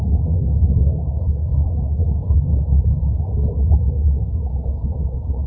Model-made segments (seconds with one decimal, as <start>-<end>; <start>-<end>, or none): 0.0-5.5